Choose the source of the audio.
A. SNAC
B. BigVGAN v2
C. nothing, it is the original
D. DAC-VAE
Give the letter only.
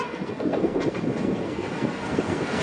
A